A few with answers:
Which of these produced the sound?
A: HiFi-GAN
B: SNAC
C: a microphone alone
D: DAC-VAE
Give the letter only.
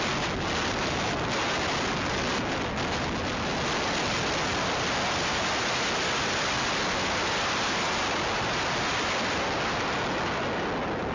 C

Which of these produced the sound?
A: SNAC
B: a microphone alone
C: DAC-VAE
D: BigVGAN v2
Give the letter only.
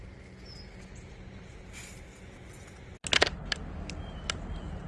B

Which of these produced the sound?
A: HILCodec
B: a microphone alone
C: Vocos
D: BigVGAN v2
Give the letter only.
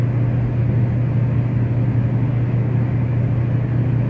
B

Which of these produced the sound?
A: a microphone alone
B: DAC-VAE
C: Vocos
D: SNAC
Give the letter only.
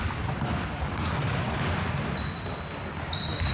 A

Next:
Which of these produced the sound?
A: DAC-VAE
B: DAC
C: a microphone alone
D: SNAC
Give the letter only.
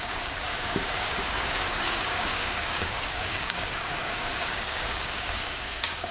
B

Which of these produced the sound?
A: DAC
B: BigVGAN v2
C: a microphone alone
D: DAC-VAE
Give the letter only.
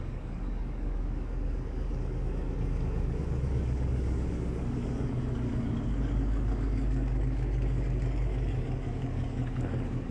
A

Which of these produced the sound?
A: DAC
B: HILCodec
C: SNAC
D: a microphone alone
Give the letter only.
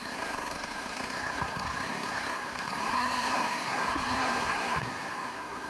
C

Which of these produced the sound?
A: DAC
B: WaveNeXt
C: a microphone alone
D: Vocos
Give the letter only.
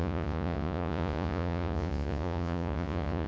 D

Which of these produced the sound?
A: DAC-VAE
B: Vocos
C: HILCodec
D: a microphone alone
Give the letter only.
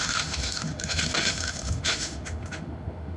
A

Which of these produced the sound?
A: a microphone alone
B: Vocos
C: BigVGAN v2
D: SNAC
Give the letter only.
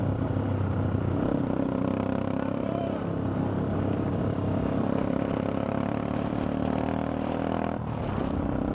C